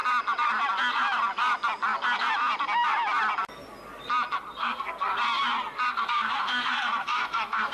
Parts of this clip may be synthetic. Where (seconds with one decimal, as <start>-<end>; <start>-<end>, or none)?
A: 4.6-5.1; 5.9-7.7